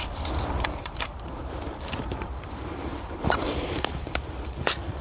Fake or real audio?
fake